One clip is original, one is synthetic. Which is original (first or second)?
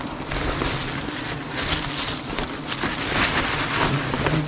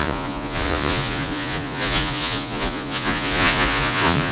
first